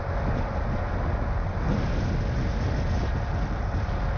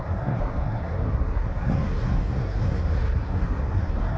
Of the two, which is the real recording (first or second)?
first